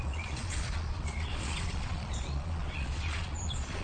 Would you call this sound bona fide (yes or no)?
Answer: no